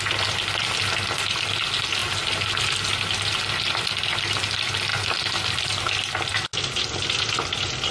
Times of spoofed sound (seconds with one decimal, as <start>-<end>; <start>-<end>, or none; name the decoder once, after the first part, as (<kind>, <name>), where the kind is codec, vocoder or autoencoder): none